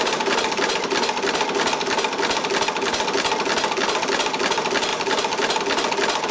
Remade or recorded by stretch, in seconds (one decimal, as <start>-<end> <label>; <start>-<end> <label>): 0.0-4.9 recorded; 4.9-5.6 remade; 5.6-6.3 recorded